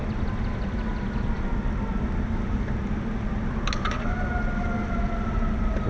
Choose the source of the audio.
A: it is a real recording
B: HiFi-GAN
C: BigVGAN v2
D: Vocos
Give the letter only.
A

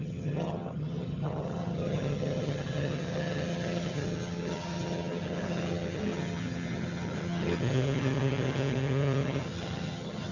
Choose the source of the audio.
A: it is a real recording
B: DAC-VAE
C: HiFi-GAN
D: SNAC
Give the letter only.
C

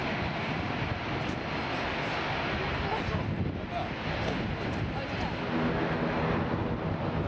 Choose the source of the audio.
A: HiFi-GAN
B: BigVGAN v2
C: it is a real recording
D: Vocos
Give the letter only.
C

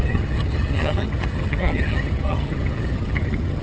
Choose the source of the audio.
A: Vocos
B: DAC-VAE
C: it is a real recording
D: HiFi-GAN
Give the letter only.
D